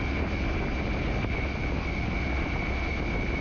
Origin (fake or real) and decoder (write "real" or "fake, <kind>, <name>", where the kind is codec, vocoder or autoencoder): real